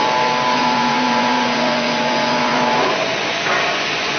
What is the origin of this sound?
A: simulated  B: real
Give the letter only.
A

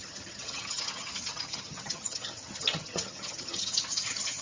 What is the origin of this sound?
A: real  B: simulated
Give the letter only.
B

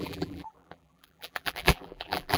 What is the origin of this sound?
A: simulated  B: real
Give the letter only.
A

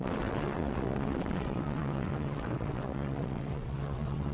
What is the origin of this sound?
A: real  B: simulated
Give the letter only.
B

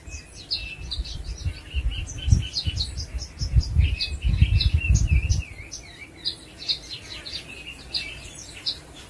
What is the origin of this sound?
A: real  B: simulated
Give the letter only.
B